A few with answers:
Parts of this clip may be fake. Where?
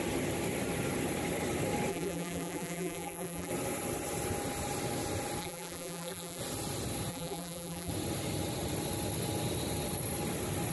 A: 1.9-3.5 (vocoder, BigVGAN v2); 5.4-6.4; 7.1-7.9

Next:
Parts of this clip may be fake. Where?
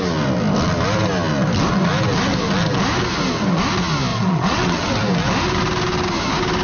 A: 4.1-5.0 (vocoder, WaveNeXt)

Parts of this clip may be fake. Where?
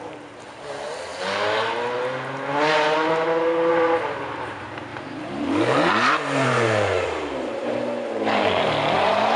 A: 0.0-1.1 (vocoder, BigVGAN v2); 3.7-7.8; 8.3-9.4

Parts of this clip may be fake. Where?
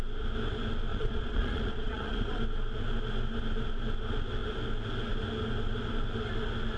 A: 0.9-2.4 (vocoder, Vocos)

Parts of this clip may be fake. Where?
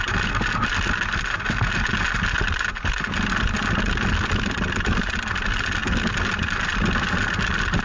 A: none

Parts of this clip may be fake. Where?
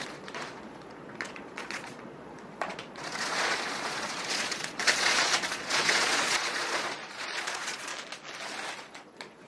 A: 0.0-7.9 (vocoder, Vocos); 8.8-9.5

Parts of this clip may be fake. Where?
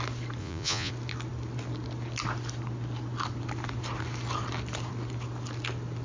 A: 0.4-0.9 (vocoder, Vocos)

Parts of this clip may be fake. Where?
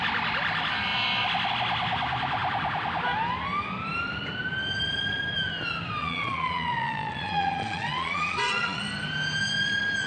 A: 6.0-8.8 (vocoder, Vocos)